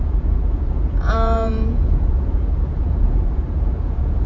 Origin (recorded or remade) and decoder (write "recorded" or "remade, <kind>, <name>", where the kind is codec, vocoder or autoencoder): remade, vocoder, Vocos